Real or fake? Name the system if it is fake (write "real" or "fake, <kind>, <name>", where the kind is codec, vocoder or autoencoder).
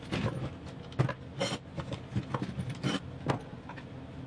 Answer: real